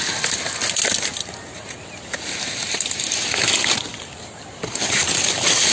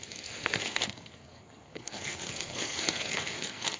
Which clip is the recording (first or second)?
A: first